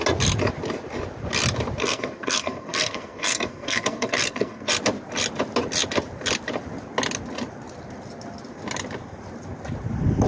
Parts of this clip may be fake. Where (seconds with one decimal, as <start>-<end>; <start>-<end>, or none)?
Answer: 1.8-4.7